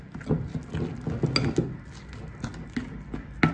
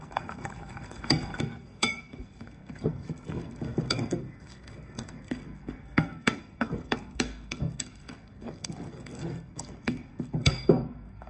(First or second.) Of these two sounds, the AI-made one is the second